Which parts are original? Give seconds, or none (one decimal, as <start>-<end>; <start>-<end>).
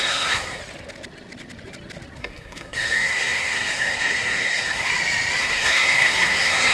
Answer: 0.6-2.2; 4.9-5.4